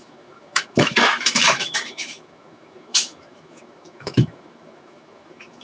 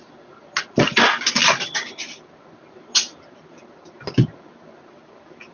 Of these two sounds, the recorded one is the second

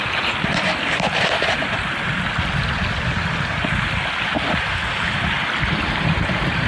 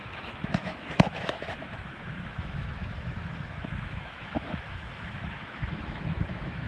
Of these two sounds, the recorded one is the first